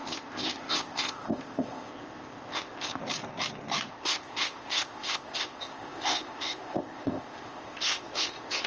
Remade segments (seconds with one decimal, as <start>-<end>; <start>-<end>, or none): 0.0-3.0; 3.9-8.7

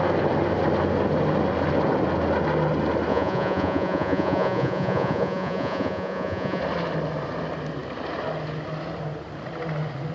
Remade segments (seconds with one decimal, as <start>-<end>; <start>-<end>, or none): 3.1-6.6

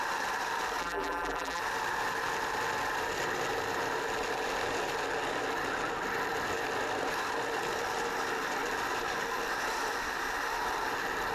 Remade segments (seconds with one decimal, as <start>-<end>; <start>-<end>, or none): 0.8-1.6

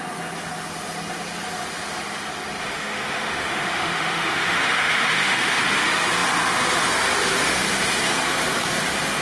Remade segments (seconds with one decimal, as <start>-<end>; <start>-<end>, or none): 2.6-5.6

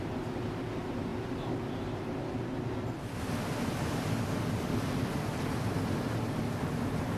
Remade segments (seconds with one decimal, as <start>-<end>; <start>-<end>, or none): none